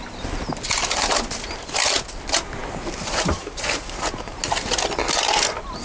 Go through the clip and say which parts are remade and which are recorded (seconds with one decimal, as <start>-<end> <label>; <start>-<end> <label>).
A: 0.0-5.8 recorded